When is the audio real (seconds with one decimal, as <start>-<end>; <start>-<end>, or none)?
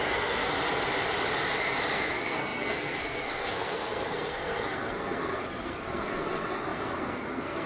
0.5-1.9